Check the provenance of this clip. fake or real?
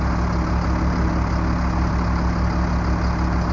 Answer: real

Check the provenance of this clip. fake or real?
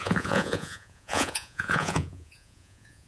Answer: fake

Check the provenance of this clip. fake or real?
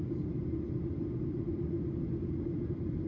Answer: real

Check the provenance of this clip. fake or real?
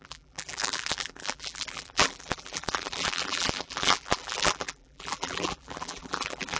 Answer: fake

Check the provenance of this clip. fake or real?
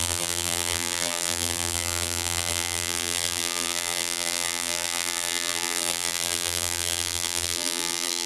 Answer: fake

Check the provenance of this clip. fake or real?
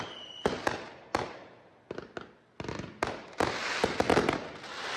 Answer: real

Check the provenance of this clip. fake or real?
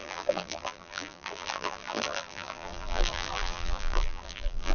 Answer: fake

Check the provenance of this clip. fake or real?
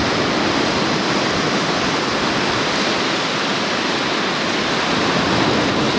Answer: real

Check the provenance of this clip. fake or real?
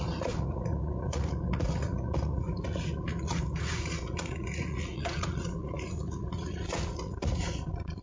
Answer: fake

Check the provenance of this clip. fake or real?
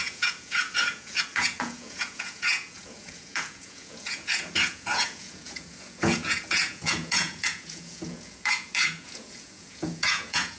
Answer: fake